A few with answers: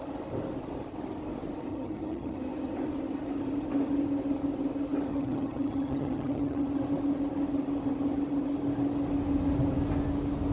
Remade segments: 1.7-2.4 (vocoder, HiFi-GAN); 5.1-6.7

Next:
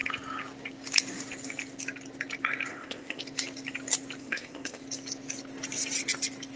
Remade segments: 2.7-3.2 (codec, ZipCodec); 4.2-4.8

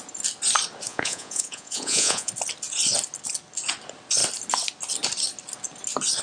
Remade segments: 0.9-2.3 (vocoder, Vocos)